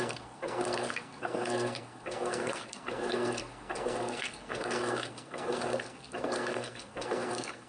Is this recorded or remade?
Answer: remade